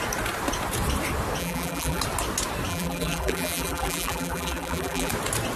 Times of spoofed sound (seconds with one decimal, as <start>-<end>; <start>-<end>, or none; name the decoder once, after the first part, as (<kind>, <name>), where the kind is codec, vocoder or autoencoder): 1.4-2.0 (vocoder, BigVGAN v2); 2.7-5.1